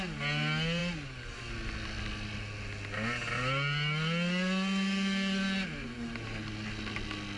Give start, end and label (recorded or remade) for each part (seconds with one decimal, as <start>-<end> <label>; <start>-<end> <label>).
0.0-7.4 recorded